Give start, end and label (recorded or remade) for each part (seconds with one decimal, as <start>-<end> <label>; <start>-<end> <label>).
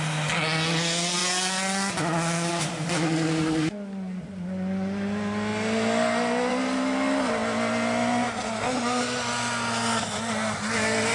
0.0-11.1 recorded